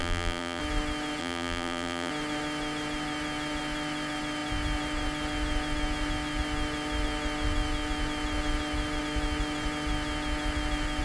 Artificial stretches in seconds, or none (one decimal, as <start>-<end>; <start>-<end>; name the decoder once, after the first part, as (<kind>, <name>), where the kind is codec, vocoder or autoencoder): 0.0-0.6 (vocoder, BigVGAN v2); 1.2-2.1